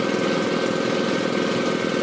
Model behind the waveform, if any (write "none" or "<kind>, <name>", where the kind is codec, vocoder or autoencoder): none